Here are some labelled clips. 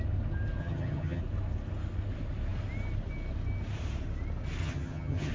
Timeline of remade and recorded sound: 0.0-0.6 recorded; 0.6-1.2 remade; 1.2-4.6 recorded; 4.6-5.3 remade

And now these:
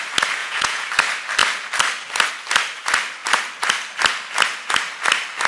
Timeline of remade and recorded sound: 0.0-0.4 recorded; 0.4-0.9 remade; 0.9-5.5 recorded

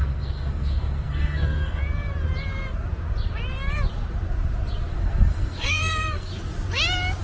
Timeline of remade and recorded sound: 0.0-1.8 remade; 1.8-4.9 recorded; 4.9-6.3 remade; 6.3-7.2 recorded